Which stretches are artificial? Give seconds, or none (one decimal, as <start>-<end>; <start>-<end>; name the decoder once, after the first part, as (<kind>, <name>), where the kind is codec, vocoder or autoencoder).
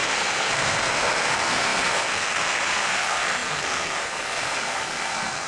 0.0-5.5 (codec, SNAC)